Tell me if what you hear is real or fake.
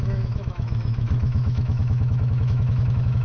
fake